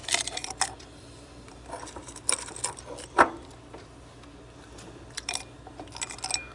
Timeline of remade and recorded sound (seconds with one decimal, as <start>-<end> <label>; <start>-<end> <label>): 0.0-3.6 remade; 3.6-6.5 recorded